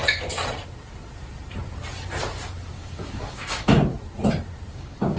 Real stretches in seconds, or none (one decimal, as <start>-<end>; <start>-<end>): 0.0-2.7; 3.9-4.7